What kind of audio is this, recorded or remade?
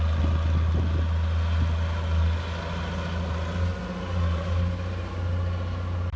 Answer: recorded